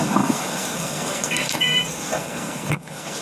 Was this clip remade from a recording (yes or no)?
yes